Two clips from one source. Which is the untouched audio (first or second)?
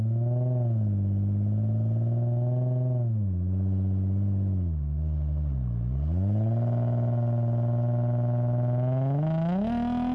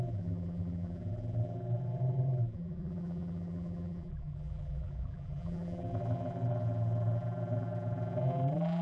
first